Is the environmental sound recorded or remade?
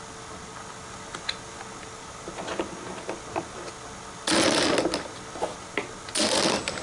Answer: recorded